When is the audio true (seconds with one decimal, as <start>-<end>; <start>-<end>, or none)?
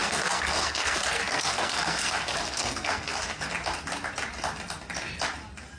3.5-5.8